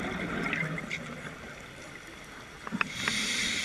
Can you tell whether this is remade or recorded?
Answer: recorded